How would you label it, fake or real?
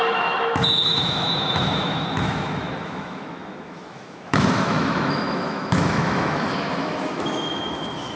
fake